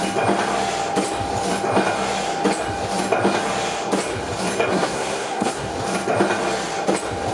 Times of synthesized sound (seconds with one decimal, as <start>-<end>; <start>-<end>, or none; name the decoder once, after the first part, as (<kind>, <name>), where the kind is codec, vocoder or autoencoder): 4.7-5.7 (codec, SNAC)

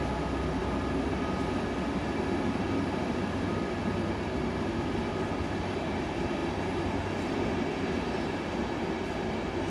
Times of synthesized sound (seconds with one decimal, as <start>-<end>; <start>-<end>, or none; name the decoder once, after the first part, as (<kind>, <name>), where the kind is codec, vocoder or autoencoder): none

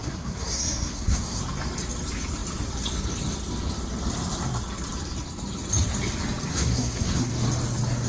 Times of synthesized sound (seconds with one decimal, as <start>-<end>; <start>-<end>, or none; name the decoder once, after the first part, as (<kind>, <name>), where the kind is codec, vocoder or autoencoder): 0.0-1.4 (codec, SNAC); 6.5-7.3

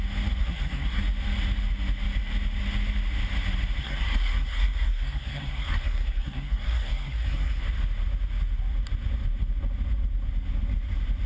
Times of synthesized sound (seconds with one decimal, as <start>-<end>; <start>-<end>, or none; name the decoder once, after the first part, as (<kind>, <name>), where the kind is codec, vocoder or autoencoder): 0.4-1.0 (codec, SNAC); 3.8-7.6

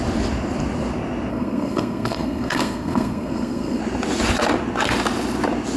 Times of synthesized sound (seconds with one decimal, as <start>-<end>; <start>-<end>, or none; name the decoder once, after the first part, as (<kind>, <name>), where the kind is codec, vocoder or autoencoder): 1.3-3.8 (codec, SNAC)